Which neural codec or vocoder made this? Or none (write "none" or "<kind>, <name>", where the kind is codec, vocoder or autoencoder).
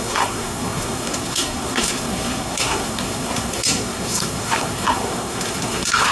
codec, SNAC